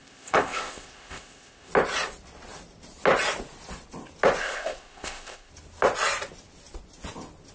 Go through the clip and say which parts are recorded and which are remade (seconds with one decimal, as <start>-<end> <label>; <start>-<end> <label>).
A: 0.0-1.7 remade; 1.7-4.4 recorded; 4.4-5.5 remade; 5.5-7.5 recorded